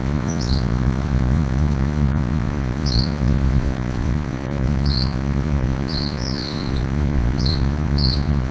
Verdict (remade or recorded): remade